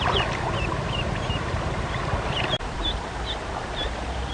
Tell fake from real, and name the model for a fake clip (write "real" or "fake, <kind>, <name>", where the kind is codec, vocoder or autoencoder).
fake, vocoder, BigVGAN v2